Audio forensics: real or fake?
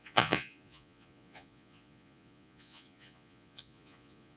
fake